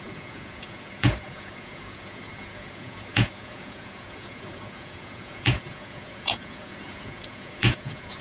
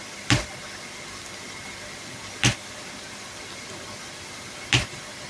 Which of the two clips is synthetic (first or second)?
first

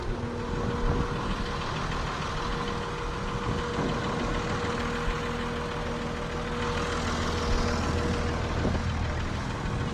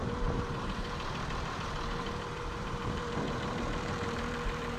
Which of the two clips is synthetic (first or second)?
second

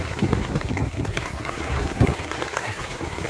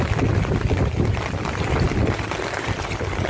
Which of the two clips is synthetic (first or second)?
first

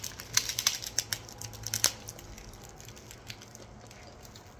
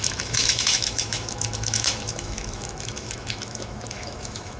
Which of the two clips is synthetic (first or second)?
second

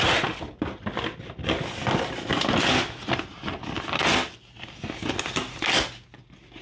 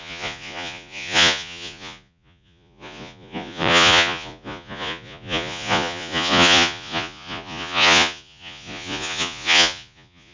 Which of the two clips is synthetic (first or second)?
second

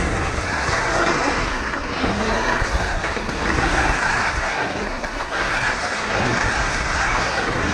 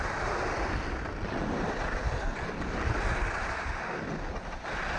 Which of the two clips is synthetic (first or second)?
first